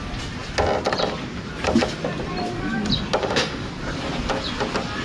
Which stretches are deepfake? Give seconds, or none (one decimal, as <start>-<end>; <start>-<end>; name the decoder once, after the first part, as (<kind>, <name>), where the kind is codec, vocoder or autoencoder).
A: 3.2-3.7 (autoencoder, DAC-VAE)